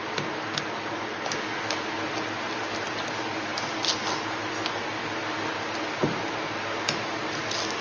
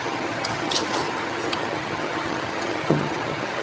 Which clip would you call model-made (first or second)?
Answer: second